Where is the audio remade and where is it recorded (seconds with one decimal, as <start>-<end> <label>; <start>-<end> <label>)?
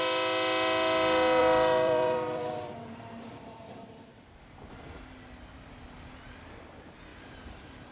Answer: 0.0-1.4 recorded; 1.4-4.7 remade; 4.7-7.1 recorded; 7.1-7.9 remade